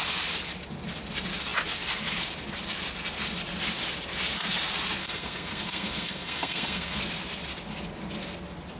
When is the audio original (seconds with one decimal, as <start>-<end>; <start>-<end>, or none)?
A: 0.0-5.0; 7.0-8.8